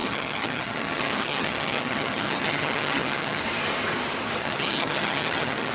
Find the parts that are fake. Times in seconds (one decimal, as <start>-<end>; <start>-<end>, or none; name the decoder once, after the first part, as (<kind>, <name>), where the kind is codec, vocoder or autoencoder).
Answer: 0.0-3.4 (vocoder, HiFi-GAN); 4.4-5.7